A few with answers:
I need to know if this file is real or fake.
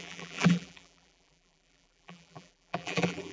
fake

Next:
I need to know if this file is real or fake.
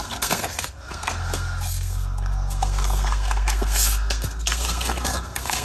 fake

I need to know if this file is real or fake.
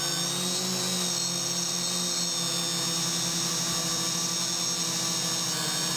real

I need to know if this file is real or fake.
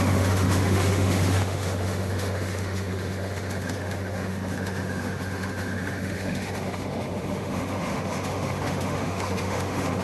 fake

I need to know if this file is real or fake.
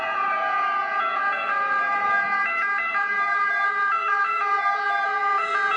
fake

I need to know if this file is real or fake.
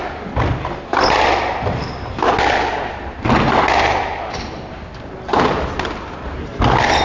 real